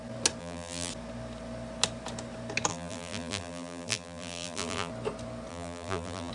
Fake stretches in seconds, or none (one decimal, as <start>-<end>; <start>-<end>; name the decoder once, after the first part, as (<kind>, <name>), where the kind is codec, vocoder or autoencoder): 0.4-0.9 (vocoder, BigVGAN v2); 2.7-4.9; 5.5-6.3

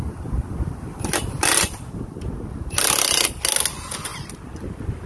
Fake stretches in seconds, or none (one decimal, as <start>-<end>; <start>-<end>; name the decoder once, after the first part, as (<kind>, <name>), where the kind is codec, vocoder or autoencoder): 0.4-2.3 (vocoder, BigVGAN v2); 4.1-5.1

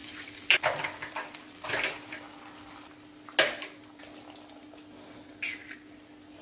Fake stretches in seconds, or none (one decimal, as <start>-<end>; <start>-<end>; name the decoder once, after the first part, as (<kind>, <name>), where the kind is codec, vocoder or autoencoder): 0.0-2.5 (vocoder, BigVGAN v2)

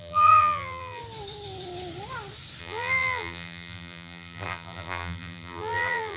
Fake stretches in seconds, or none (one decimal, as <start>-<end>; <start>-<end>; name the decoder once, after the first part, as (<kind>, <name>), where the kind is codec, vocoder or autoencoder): 0.0-1.0 (vocoder, BigVGAN v2); 2.6-6.2

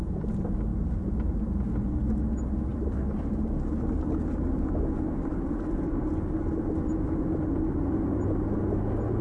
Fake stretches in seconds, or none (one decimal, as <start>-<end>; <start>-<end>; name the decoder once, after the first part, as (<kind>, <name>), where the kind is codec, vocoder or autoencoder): 0.7-1.4 (vocoder, BigVGAN v2); 2.7-3.3; 5.3-6.3